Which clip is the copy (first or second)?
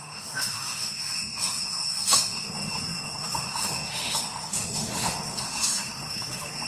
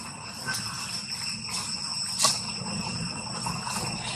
first